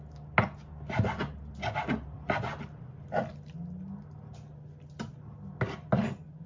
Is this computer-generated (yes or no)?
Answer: no